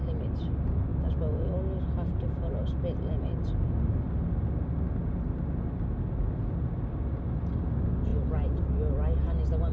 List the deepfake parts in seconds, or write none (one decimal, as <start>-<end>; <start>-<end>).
none